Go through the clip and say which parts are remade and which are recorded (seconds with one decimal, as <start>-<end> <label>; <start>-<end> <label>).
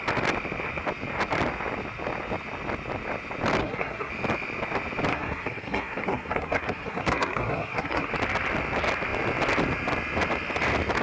0.0-3.6 recorded; 3.6-4.1 remade; 4.1-5.1 recorded; 5.1-8.1 remade; 8.1-11.0 recorded